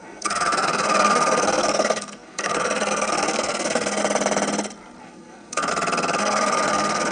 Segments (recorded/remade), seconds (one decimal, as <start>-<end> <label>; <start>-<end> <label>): 0.0-4.0 remade; 4.0-5.0 recorded; 5.0-5.7 remade; 5.7-6.2 recorded; 6.2-7.1 remade